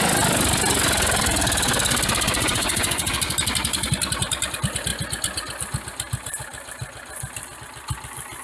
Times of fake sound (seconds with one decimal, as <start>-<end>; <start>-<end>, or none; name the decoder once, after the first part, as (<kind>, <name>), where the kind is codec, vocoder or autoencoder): 2.4-3.1 (vocoder, Vocos)